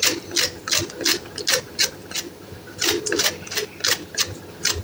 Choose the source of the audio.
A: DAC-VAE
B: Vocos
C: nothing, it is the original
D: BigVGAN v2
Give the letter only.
C